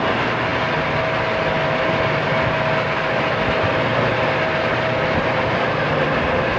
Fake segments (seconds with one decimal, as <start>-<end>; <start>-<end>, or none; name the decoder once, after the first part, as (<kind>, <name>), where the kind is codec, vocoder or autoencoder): none